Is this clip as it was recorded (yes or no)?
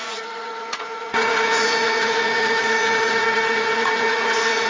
no